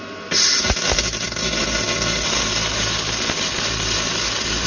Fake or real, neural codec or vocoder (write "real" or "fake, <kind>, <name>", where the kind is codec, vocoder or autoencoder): real